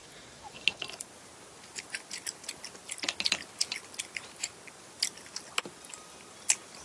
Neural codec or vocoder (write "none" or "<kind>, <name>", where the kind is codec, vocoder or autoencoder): none